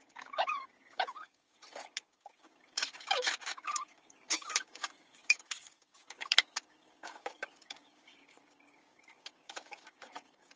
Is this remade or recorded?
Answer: remade